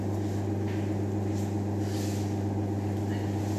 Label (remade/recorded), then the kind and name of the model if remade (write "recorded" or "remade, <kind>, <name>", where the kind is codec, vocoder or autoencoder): recorded